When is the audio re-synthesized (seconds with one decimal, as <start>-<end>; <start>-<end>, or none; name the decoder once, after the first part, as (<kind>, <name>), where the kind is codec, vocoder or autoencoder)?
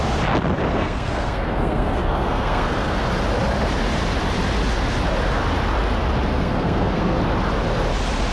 0.7-3.1 (codec, SNAC); 6.3-7.2